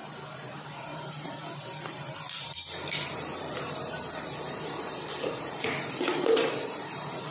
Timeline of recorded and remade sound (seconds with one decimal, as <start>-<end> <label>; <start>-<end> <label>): 0.0-0.7 recorded; 0.7-7.3 remade

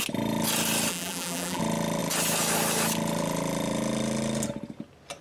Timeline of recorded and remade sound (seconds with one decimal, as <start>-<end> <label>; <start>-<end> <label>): 0.0-0.9 recorded; 0.9-1.6 remade; 1.6-5.2 recorded

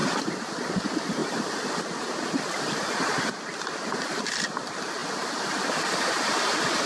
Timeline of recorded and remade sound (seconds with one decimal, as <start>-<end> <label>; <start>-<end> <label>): 0.0-6.9 remade

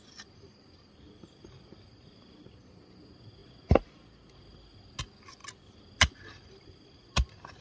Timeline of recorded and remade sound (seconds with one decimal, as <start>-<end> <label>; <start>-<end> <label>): 0.0-3.4 remade; 3.4-5.0 recorded; 5.0-7.6 remade

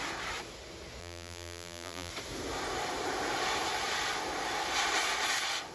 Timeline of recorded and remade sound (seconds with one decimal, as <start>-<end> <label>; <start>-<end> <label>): 0.0-1.0 recorded; 1.0-2.1 remade; 2.1-5.7 recorded

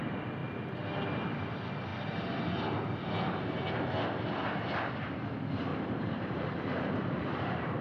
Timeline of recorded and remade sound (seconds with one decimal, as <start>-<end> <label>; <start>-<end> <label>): 0.0-0.4 remade; 0.4-1.4 recorded; 1.4-1.9 remade; 1.9-4.9 recorded; 4.9-7.8 remade

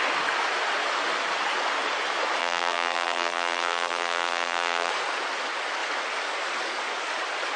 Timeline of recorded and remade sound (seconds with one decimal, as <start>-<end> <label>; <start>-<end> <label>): 0.0-2.4 recorded; 2.4-4.9 remade; 4.9-7.6 recorded